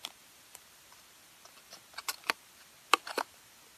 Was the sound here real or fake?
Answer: real